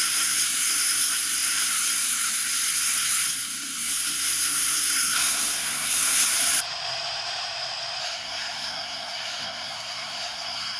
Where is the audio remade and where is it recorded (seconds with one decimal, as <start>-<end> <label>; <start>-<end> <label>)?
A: 0.0-6.3 remade; 6.3-8.0 recorded; 8.0-10.8 remade